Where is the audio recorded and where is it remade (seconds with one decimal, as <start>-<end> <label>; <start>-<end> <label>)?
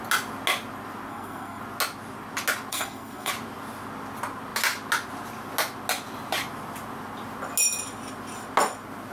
0.0-1.1 recorded; 1.1-1.6 remade; 1.6-2.7 recorded; 2.7-3.3 remade; 3.3-9.1 recorded